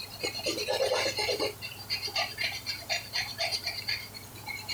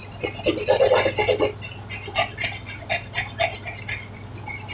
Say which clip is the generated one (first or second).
first